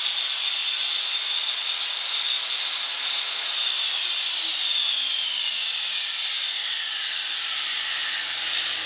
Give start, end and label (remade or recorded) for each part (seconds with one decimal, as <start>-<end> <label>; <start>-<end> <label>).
0.0-8.9 recorded